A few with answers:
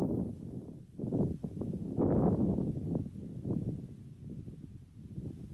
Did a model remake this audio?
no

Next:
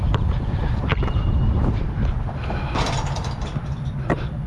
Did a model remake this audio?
no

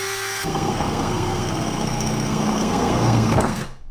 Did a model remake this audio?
yes